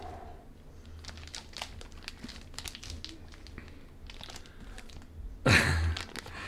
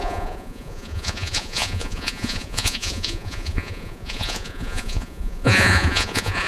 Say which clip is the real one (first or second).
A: first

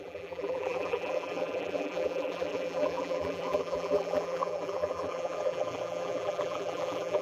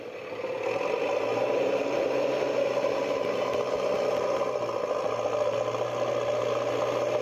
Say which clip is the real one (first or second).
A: second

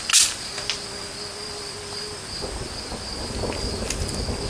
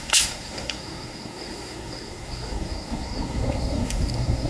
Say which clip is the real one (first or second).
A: first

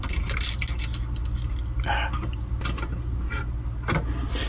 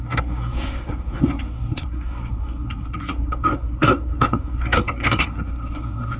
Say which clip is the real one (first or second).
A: first